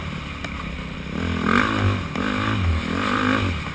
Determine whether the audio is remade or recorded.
recorded